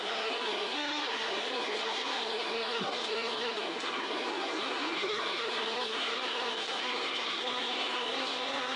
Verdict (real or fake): fake